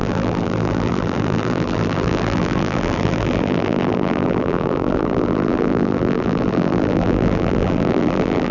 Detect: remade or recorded remade